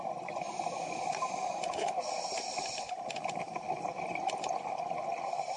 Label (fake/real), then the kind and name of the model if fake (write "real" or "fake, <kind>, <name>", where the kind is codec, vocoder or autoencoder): real